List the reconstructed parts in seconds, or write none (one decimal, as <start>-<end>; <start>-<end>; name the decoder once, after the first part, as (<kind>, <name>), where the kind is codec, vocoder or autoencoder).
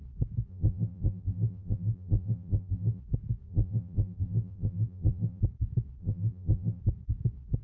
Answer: 0.5-3.0 (vocoder, BigVGAN v2); 3.5-5.4; 6.0-6.8